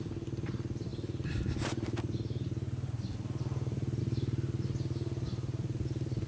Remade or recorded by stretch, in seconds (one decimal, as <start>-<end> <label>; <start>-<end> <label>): 0.0-6.3 recorded

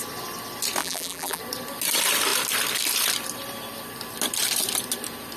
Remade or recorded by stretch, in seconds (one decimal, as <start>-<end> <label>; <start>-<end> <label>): 0.0-0.8 recorded; 0.8-1.4 remade; 1.4-5.4 recorded

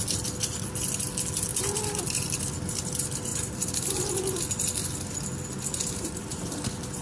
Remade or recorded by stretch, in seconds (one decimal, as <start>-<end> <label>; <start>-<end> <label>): 0.0-3.3 recorded; 3.3-4.4 remade; 4.4-5.7 recorded; 5.7-7.0 remade

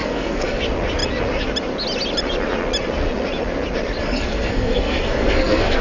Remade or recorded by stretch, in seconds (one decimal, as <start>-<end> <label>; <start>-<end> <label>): 0.0-0.6 remade; 0.6-4.0 recorded; 4.0-5.8 remade

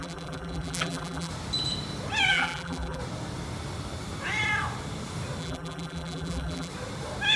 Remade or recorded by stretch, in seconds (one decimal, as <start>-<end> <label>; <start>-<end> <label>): 0.0-1.3 remade; 1.3-2.3 recorded; 2.3-3.0 remade; 3.0-5.4 recorded; 5.4-6.7 remade; 6.7-7.4 recorded

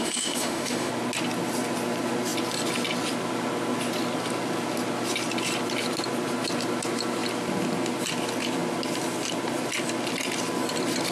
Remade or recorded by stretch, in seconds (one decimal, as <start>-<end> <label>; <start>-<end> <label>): 0.0-0.9 remade; 0.9-11.1 recorded

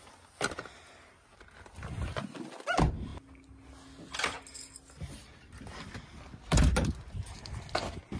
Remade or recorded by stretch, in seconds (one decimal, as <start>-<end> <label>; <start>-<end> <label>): 0.0-8.2 recorded

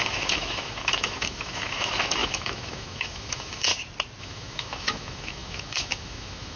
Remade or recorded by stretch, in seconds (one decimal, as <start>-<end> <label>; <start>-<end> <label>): 0.0-3.7 remade; 3.7-4.2 recorded; 4.2-6.6 remade